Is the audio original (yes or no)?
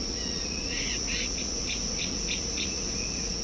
no